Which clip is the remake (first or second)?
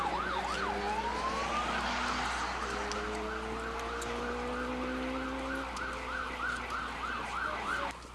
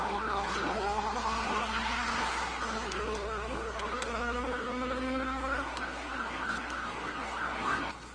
second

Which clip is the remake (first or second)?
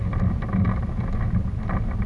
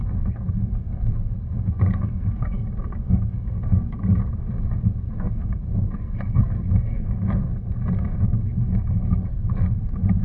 second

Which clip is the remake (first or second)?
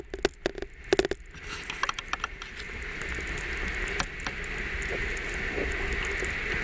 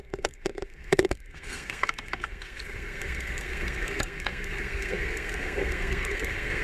second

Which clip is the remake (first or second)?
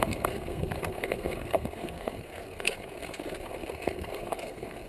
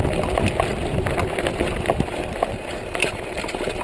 first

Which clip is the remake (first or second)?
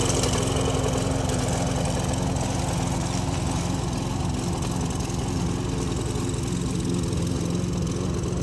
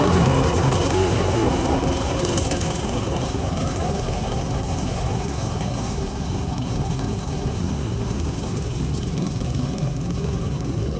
second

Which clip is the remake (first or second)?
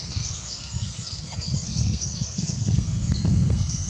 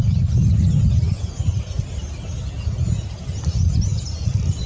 first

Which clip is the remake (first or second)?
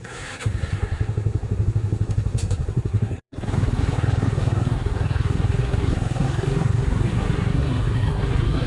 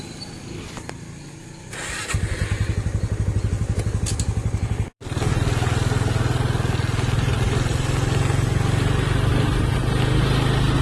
first